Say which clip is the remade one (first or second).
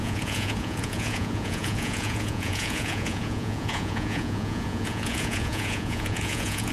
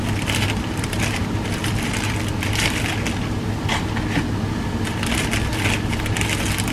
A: first